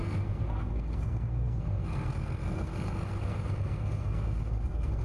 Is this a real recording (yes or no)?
no